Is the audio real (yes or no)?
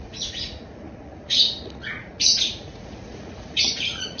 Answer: no